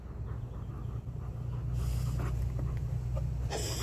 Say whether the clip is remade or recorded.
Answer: recorded